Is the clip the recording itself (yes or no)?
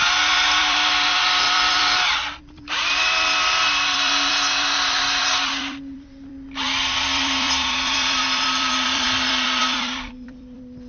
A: no